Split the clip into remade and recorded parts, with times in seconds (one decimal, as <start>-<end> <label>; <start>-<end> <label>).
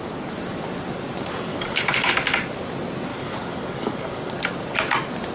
0.0-1.5 recorded; 1.5-2.1 remade; 2.1-3.1 recorded; 3.1-4.3 remade; 4.3-5.3 recorded